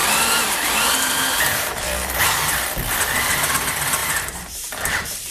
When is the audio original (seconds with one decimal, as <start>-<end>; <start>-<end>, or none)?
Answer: 2.2-4.0